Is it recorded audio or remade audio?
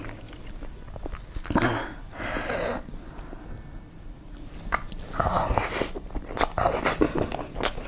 recorded